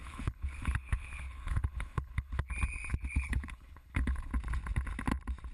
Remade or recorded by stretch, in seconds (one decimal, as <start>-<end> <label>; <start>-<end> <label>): 0.0-2.5 remade; 2.5-2.9 recorded; 2.9-4.3 remade; 4.3-5.5 recorded